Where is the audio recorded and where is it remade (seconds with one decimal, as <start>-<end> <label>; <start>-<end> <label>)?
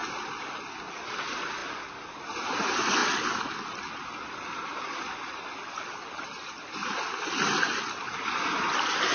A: 0.0-9.1 recorded